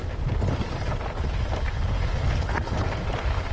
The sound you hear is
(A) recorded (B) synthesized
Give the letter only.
A